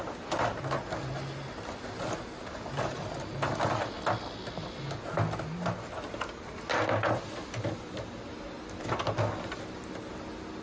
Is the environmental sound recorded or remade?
recorded